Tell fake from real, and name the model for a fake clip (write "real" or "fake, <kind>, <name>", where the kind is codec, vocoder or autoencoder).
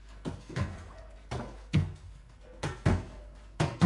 fake, codec, SNAC